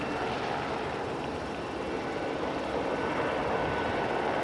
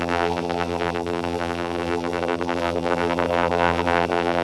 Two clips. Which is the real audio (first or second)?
first